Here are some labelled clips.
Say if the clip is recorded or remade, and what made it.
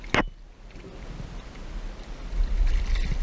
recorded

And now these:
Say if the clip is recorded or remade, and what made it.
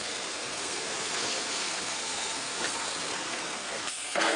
remade, codec, SNAC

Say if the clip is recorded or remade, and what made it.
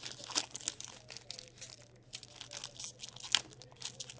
recorded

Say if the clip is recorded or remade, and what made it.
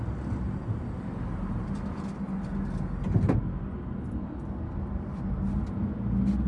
recorded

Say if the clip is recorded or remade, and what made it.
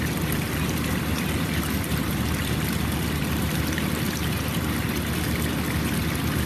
remade, vocoder, BigVGAN v2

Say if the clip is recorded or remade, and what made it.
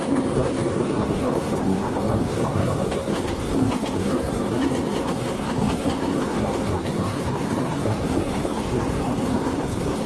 remade, codec, SNAC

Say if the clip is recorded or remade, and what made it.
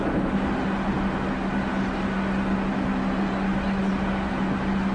recorded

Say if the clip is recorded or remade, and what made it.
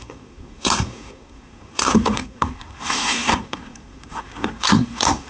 remade, codec, SNAC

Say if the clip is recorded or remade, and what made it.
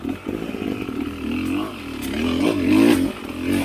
recorded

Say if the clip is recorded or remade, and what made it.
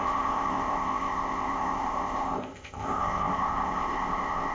remade, codec, ZipCodec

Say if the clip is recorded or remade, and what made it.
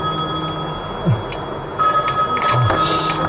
recorded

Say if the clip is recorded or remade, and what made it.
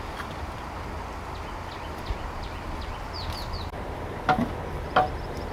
recorded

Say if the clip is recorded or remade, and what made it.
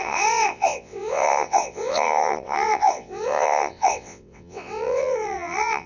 remade, vocoder, WaveNeXt